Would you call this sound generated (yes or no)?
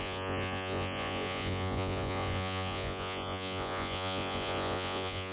yes